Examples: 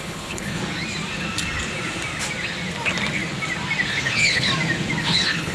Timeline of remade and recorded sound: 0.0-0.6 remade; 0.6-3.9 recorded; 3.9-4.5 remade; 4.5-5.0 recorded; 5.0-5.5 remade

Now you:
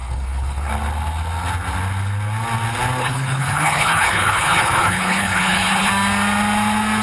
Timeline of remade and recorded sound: 0.0-0.7 remade; 0.7-3.0 recorded; 3.0-5.9 remade; 5.9-7.0 recorded

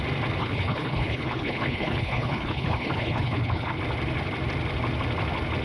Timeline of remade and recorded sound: 0.0-0.4 recorded; 0.4-3.8 remade; 3.8-5.6 recorded

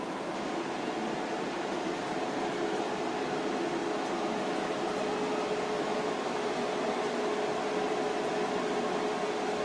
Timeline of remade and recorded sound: 0.0-9.6 recorded

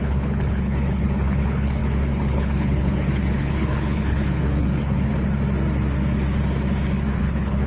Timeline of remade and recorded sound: 0.0-5.1 remade; 5.1-7.2 recorded; 7.2-7.7 remade

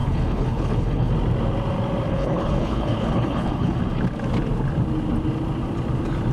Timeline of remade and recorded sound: 0.0-1.1 remade; 1.1-2.1 recorded; 2.1-3.8 remade; 3.8-6.3 recorded